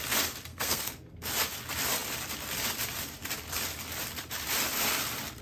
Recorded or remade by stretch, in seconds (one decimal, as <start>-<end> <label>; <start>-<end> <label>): 0.0-0.5 recorded; 0.5-1.3 remade; 1.3-5.4 recorded